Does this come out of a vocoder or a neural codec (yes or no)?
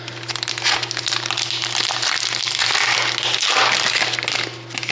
no